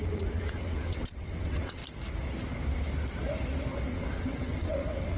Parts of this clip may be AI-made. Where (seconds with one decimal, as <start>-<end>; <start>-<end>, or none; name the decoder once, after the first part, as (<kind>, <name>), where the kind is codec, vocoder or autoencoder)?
0.0-1.8 (vocoder, WaveNeXt); 3.9-5.2